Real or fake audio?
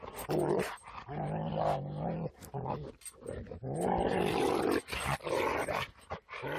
real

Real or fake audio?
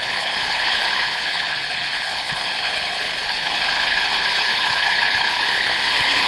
fake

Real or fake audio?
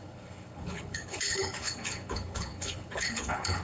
fake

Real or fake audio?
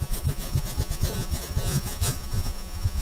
fake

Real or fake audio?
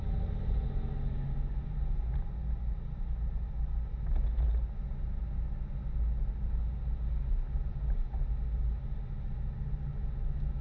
real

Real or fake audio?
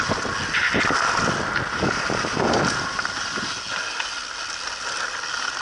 real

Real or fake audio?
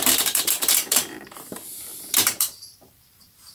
fake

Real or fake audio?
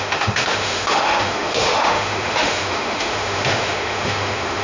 fake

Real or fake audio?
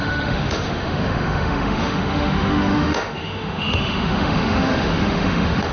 fake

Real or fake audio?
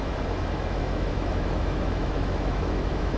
fake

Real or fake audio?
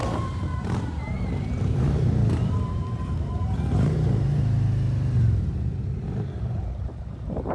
fake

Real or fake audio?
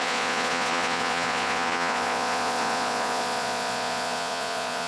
fake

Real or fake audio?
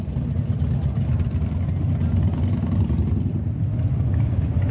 real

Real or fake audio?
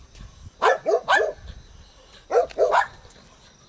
real